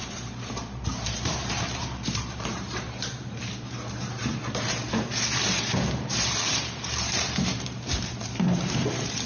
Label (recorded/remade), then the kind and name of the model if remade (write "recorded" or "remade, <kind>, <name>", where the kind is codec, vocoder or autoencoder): remade, vocoder, BigVGAN v2